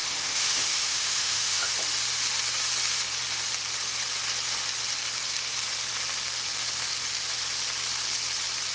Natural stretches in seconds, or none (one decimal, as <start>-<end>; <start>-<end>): 1.7-8.7